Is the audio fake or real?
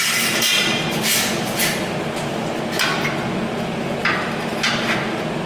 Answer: real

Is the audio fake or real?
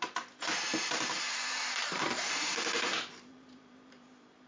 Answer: fake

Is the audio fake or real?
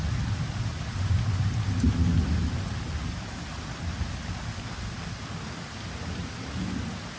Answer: real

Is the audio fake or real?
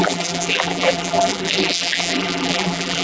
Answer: fake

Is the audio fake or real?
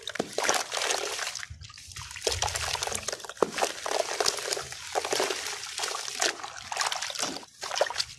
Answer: real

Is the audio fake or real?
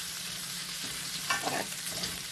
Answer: fake